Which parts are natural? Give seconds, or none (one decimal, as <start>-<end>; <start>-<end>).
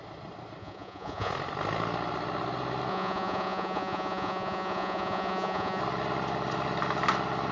0.0-0.6; 1.3-2.9; 5.8-7.5